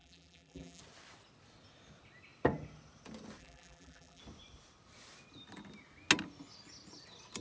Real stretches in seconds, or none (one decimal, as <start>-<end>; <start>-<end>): 0.8-3.4; 4.2-7.4